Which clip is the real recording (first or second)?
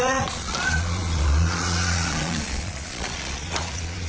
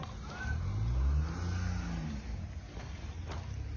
second